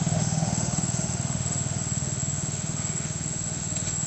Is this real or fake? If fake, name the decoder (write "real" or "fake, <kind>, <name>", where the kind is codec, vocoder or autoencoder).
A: fake, autoencoder, DAC-VAE